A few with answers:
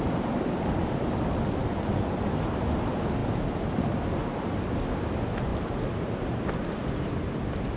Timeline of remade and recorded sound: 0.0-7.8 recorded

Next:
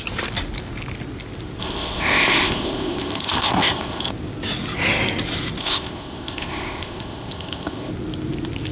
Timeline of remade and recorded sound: 0.0-1.6 recorded; 1.6-4.1 remade; 4.1-5.6 recorded; 5.6-7.9 remade; 7.9-8.7 recorded